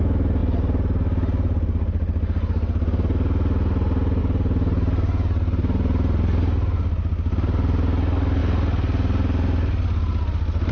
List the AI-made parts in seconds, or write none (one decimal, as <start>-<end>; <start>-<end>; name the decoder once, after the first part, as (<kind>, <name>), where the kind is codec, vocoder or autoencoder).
none